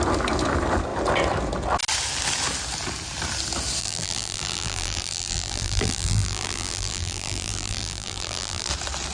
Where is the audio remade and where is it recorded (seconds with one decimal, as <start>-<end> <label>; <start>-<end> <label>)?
0.0-3.8 recorded; 3.8-8.7 remade; 8.7-9.1 recorded